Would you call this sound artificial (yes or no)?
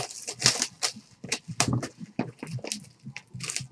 no